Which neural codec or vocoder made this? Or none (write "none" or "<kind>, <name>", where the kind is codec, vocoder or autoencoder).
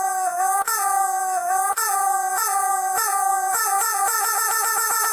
vocoder, Vocos